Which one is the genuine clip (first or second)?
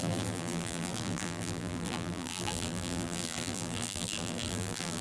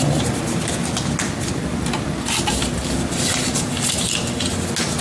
second